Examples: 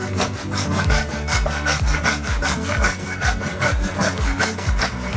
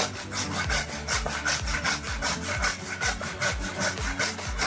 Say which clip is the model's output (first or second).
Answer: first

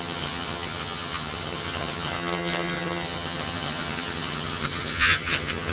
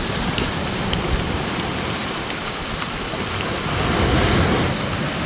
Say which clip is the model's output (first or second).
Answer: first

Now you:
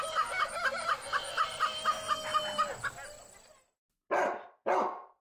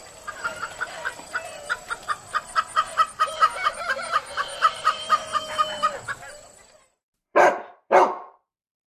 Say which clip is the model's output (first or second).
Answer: second